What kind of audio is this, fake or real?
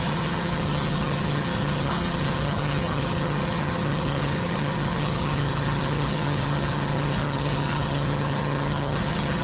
fake